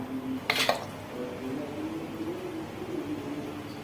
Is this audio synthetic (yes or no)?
no